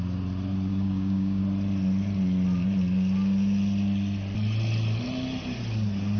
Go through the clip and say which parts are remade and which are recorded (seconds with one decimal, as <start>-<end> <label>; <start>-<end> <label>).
0.0-0.7 recorded; 0.7-1.4 remade; 1.4-6.2 recorded